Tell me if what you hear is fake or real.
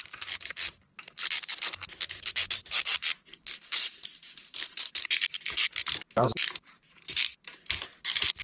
fake